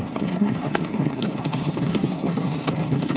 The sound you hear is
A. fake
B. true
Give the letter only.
A